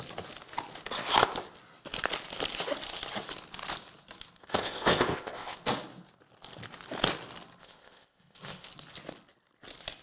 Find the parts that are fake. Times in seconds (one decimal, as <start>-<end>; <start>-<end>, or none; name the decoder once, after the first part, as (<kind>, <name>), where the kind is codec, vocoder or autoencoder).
4.4-5.6 (codec, ZipCodec); 7.6-8.7